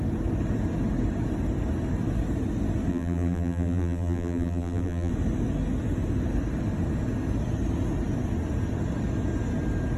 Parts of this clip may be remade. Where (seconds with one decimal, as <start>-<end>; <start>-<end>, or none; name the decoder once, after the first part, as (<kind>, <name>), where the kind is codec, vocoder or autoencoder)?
2.9-5.1 (vocoder, BigVGAN v2)